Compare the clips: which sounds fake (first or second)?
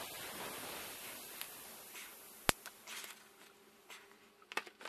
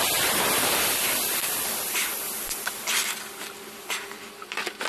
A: second